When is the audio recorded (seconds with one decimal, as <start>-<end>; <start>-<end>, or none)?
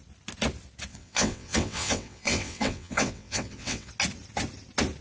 0.0-0.9; 3.9-5.0